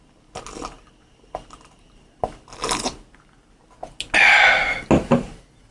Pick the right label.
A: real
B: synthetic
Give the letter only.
A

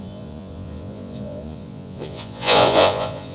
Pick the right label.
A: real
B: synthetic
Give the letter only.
B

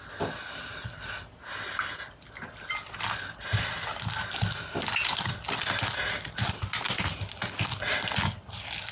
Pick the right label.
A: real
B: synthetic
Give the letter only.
A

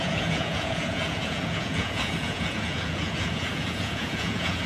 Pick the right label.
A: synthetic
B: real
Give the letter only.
A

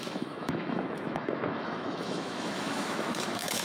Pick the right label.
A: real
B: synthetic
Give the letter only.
B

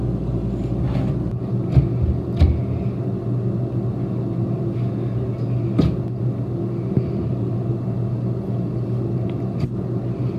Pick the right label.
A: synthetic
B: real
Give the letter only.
B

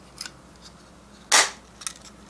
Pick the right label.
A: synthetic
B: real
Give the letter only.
B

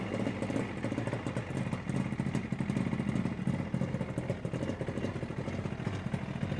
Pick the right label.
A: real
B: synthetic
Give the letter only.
A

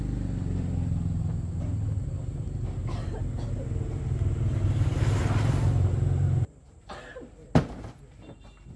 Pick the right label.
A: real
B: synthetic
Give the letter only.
A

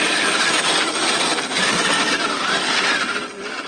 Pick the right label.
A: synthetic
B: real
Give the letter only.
B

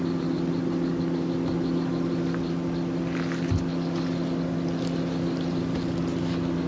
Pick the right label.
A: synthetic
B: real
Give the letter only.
B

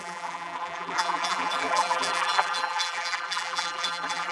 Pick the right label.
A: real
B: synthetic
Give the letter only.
B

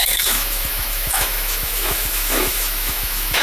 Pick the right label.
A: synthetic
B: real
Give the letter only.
A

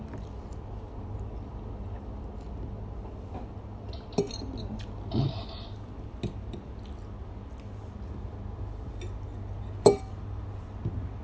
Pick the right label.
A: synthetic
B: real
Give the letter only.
B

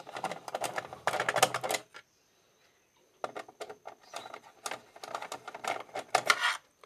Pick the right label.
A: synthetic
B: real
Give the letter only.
B